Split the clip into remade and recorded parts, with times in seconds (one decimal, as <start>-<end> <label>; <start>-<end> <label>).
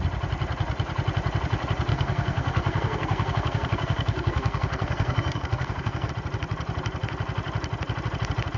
0.0-1.9 recorded; 1.9-6.1 remade; 6.1-8.6 recorded